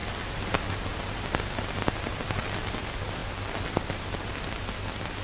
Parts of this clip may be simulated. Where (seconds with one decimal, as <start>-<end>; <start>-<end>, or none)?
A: none